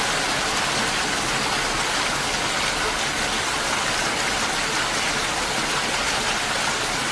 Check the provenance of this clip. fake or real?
real